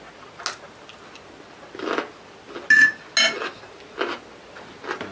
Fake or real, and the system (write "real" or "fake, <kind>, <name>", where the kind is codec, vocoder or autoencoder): real